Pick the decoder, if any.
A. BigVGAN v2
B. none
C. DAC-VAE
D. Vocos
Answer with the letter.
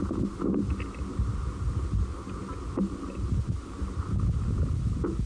B